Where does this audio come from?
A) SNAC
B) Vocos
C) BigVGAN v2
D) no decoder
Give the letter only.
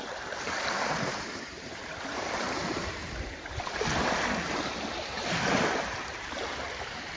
C